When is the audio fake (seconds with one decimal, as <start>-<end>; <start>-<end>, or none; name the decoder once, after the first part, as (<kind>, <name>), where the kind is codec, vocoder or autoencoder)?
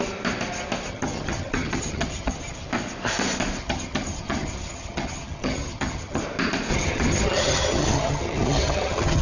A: 0.9-2.7 (vocoder, HiFi-GAN); 3.6-6.2; 6.7-9.2